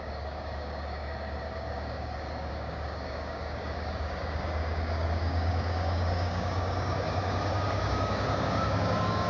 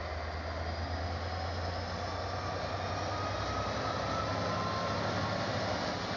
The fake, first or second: first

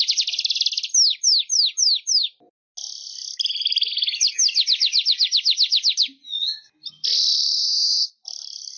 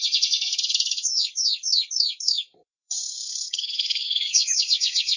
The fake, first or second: second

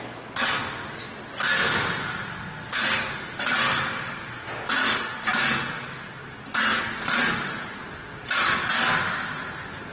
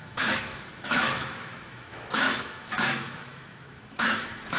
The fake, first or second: second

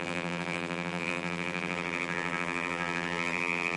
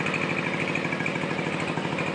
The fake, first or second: first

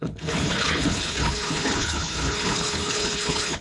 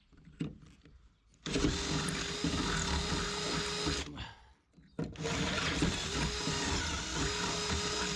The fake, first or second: first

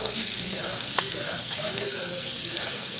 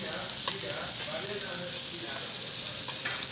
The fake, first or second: first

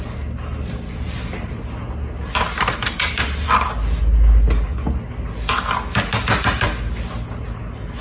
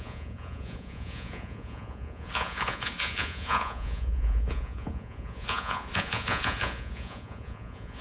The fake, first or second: second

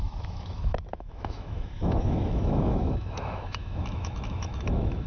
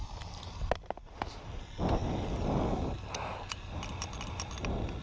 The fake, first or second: first